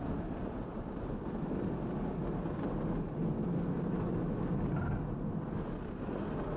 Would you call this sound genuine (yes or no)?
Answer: yes